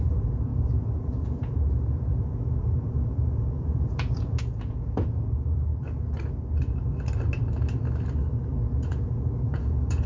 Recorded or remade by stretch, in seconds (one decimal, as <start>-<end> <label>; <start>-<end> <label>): 0.0-5.7 remade; 5.7-8.7 recorded; 8.7-10.1 remade